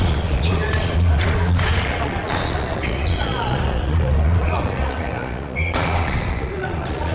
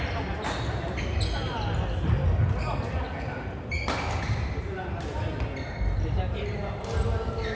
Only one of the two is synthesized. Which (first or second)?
first